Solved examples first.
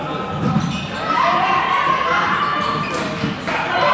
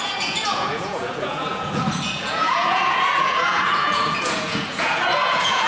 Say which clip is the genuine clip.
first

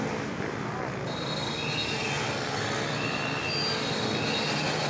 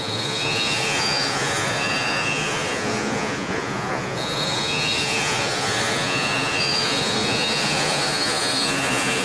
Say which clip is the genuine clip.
first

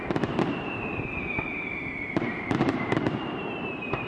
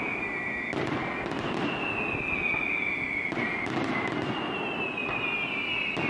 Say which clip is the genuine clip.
second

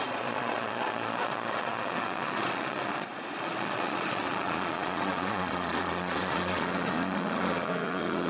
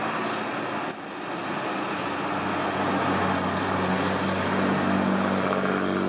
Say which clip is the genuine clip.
second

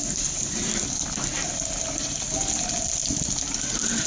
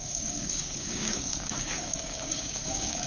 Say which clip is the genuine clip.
first